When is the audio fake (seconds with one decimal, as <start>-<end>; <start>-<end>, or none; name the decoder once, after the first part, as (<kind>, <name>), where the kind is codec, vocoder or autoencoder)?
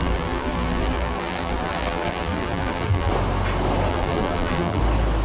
0.0-3.1 (vocoder, BigVGAN v2); 3.9-4.8